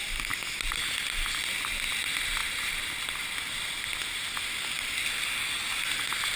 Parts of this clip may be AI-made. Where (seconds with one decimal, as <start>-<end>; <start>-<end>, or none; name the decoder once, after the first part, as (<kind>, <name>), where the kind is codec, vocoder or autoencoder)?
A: none